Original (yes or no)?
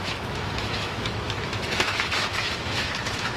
no